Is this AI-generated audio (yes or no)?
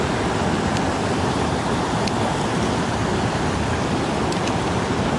no